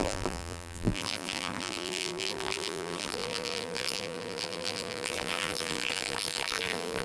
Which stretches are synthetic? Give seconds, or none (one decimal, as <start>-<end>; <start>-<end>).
0.0-7.0